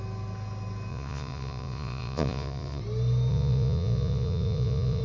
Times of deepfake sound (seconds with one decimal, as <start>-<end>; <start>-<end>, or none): 0.9-2.8; 3.3-5.0